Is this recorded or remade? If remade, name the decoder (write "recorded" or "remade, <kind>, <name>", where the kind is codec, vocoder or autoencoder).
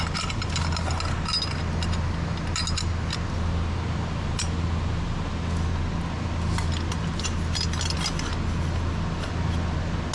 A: recorded